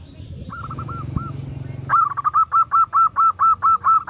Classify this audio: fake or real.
real